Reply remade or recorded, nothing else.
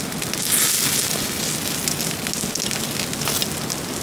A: recorded